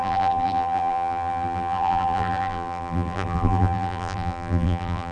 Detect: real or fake fake